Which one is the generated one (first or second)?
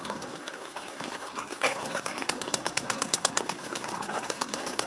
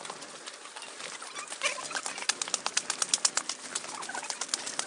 first